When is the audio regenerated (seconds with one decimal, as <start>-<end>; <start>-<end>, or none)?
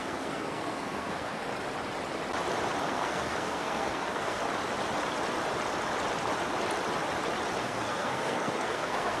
0.0-1.5; 2.8-4.4; 7.6-9.2